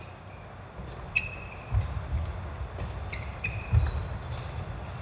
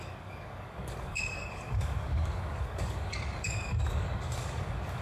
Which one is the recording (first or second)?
first